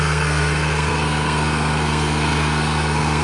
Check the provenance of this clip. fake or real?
fake